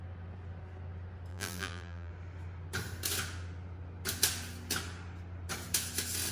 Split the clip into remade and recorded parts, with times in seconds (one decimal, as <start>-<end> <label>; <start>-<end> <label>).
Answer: 0.0-1.3 recorded; 1.3-2.1 remade; 2.1-6.3 recorded